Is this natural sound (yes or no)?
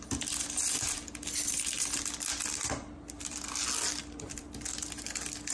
yes